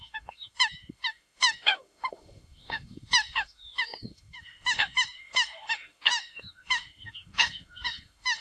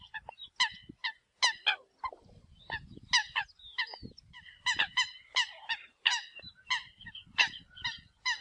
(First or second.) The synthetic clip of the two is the first